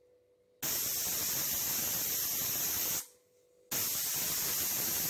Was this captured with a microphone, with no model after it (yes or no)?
yes